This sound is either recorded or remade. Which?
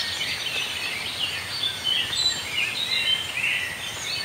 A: recorded